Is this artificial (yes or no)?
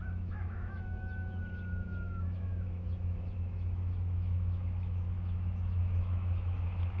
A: yes